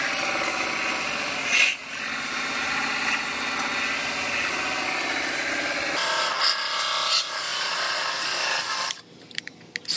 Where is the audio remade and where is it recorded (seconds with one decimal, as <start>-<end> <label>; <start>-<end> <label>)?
0.0-7.5 recorded; 7.5-8.1 remade; 8.1-10.0 recorded